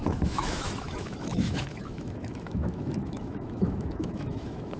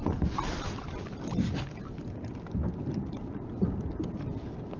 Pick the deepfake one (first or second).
first